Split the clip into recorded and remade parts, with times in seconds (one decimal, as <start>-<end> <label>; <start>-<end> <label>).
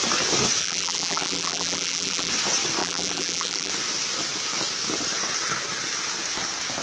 0.0-0.6 recorded; 0.6-2.3 remade; 2.3-2.8 recorded; 2.8-3.7 remade; 3.7-6.8 recorded